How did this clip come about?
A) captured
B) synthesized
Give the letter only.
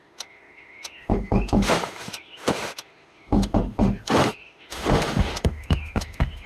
B